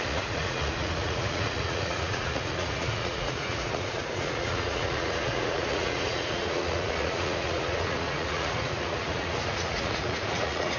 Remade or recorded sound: remade